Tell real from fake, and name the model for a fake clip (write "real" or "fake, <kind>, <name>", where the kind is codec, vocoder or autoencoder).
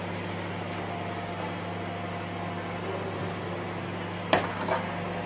real